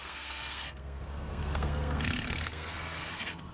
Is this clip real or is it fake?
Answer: fake